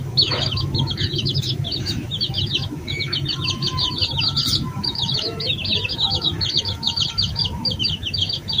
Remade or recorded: remade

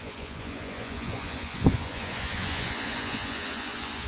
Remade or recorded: remade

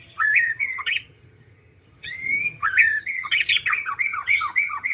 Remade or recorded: remade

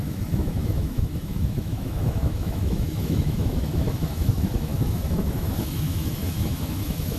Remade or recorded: remade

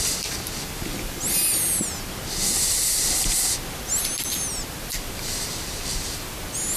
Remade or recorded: recorded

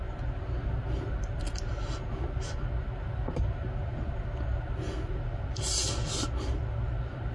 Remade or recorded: recorded